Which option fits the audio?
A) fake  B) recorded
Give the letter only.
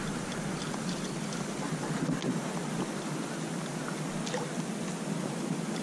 B